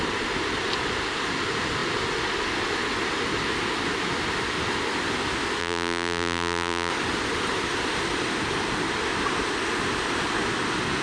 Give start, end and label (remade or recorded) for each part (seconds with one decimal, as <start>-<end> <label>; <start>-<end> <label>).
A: 0.0-5.6 recorded; 5.6-6.9 remade; 6.9-11.0 recorded